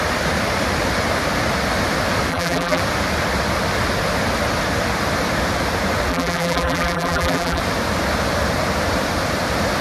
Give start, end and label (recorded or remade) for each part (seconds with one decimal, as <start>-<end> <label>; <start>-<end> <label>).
0.0-2.3 recorded; 2.3-2.8 remade; 2.8-6.1 recorded; 6.1-7.6 remade; 7.6-9.8 recorded

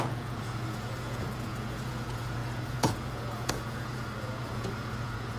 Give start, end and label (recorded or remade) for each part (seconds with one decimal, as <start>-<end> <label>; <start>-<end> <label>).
0.0-5.4 remade